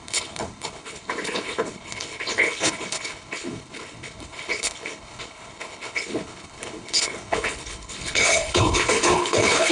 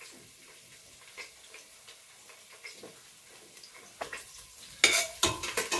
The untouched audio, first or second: second